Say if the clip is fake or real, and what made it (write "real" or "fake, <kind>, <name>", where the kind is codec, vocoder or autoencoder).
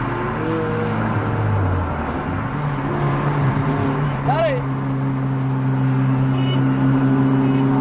real